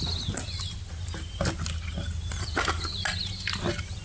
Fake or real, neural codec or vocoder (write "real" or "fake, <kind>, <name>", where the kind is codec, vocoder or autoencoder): real